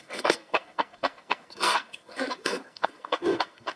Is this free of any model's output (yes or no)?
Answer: no